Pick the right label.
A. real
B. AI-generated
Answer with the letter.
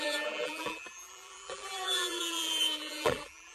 B